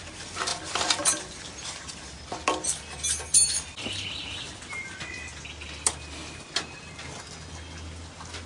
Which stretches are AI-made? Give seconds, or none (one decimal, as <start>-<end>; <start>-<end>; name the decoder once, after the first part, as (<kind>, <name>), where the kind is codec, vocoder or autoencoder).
none